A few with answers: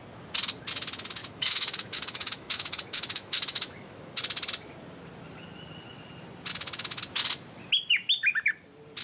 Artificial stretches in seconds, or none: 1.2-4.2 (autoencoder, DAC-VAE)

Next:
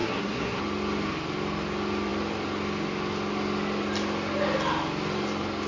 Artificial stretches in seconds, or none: 0.0-0.6 (codec, SNAC)